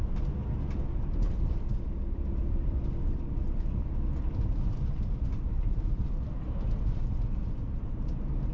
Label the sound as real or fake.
real